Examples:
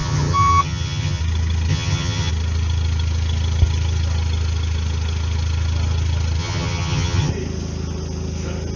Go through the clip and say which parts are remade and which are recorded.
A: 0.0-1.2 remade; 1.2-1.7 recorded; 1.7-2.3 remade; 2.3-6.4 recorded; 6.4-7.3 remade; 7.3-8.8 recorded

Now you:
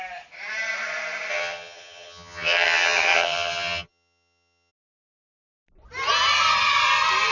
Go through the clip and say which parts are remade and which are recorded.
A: 0.0-1.3 recorded; 1.3-4.7 remade; 4.7-7.3 recorded